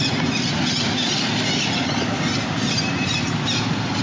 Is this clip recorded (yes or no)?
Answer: yes